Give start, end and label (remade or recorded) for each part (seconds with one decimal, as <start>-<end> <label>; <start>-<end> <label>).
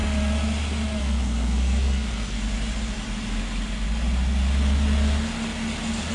0.0-1.0 recorded; 1.0-2.4 remade; 2.4-6.1 recorded